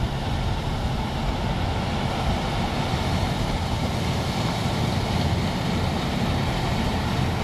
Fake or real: real